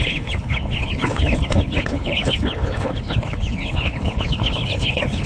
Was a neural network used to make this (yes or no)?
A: yes